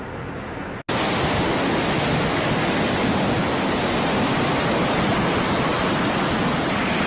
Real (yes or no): yes